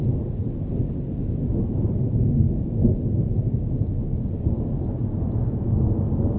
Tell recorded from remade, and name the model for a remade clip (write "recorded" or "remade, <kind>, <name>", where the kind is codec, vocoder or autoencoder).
recorded